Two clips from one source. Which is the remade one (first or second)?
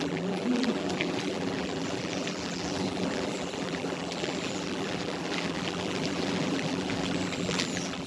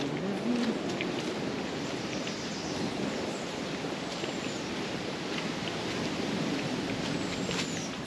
first